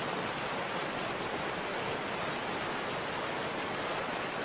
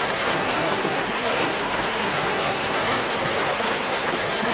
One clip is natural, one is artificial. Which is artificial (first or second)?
second